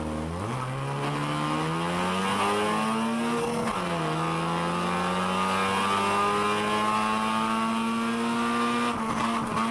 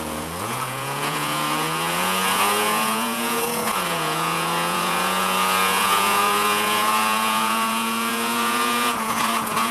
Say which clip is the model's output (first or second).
second